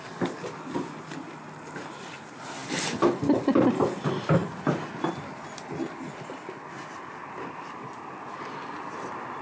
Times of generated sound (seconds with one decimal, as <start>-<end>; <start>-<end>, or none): none